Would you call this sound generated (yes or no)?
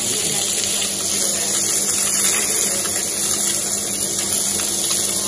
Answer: no